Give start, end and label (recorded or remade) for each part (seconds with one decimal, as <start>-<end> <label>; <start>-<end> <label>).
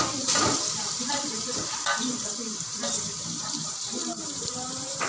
0.0-2.9 remade; 2.9-3.6 recorded; 3.6-5.1 remade